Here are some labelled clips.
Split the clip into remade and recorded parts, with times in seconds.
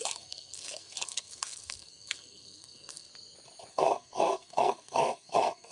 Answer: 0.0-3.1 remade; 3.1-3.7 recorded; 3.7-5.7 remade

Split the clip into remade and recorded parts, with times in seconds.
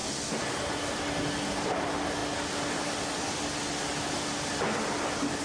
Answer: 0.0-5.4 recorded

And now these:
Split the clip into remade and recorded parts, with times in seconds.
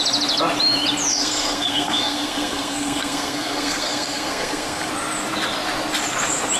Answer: 0.0-1.1 recorded; 1.1-4.9 remade; 4.9-6.6 recorded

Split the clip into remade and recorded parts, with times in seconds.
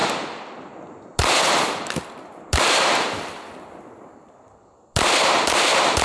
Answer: 0.0-6.0 recorded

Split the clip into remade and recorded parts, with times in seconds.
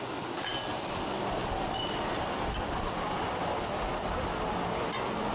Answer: 0.0-5.3 recorded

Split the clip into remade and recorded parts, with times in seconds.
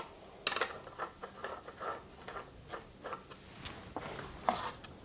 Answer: 0.0-5.0 recorded